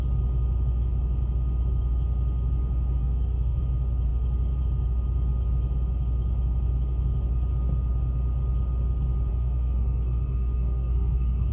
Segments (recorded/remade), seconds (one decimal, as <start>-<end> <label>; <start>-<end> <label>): 0.0-3.0 recorded; 3.0-3.6 remade; 3.6-9.3 recorded; 9.3-11.5 remade